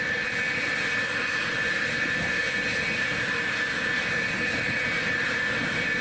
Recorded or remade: recorded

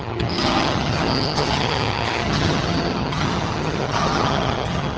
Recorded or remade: remade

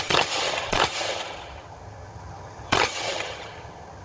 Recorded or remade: remade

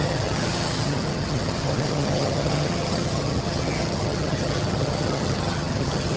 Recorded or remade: remade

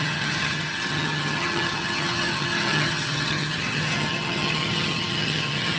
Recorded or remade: remade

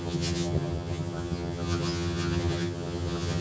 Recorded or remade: remade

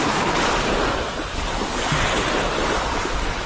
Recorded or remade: recorded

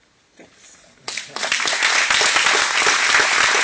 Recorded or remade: recorded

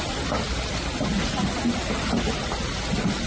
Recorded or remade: recorded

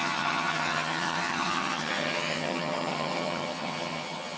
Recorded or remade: remade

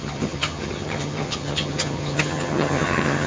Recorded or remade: remade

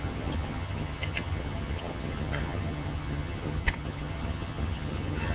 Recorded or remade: remade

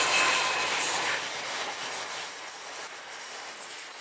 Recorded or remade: recorded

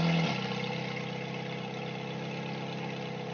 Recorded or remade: recorded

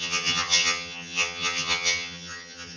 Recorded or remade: remade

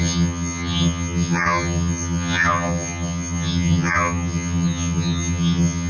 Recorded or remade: remade